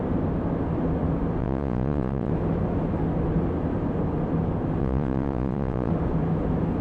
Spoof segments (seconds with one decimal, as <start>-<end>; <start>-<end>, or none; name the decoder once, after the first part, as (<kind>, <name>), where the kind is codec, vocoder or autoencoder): 1.4-2.3 (vocoder, Vocos); 4.8-5.9

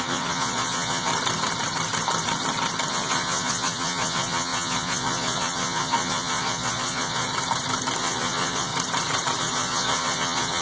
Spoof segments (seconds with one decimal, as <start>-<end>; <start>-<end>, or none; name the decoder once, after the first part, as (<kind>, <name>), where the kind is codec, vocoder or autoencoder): 0.0-1.1 (vocoder, Vocos); 2.9-7.3; 8.0-8.7; 9.4-10.6

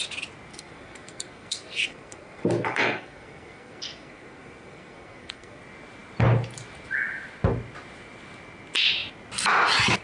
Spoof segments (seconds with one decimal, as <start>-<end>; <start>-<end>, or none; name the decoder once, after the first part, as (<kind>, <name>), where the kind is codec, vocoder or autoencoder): 0.5-5.6 (codec, SNAC)

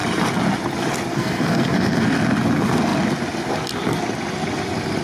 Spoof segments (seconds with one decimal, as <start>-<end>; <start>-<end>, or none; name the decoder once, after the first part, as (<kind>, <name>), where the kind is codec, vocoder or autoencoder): 1.1-2.2 (codec, SNAC)

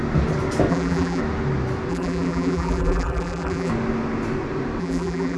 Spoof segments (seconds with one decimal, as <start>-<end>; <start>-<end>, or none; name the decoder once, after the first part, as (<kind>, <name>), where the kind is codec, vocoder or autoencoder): 0.7-1.2 (vocoder, BigVGAN v2); 1.9-3.7; 4.8-5.4